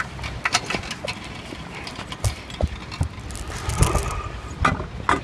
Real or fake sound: real